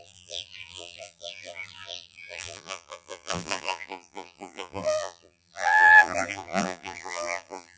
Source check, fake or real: fake